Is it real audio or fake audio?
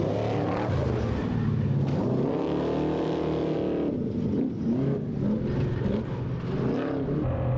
real